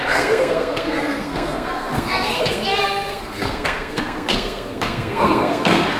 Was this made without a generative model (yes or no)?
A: no